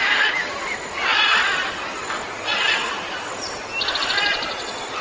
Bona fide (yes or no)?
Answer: yes